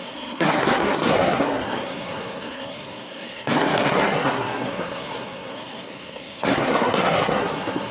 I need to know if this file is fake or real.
fake